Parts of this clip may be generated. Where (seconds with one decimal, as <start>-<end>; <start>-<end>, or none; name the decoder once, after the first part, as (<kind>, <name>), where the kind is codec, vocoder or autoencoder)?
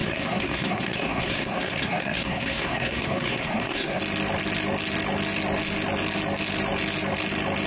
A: 0.0-4.0 (codec, SNAC)